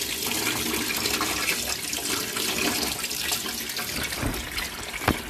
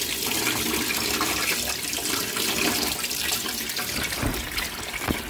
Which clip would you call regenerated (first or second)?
second